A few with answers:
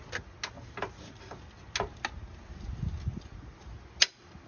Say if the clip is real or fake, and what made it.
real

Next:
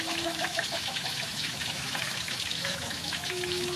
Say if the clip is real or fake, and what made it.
fake, autoencoder, DAC-VAE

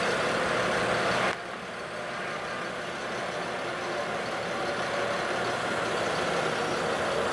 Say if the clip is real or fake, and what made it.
real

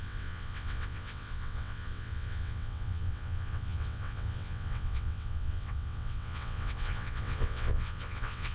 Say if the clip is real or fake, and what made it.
fake, vocoder, WaveNeXt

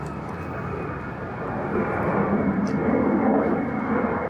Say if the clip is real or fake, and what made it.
real